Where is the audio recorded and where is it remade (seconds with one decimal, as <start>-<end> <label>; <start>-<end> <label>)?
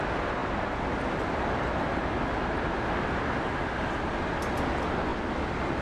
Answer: 0.0-5.8 recorded